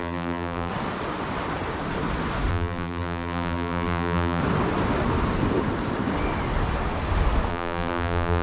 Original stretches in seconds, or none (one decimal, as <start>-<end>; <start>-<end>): 0.7-2.5; 4.4-7.5